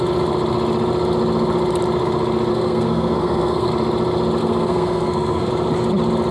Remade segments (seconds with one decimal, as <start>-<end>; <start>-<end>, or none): 2.5-3.7; 4.4-5.5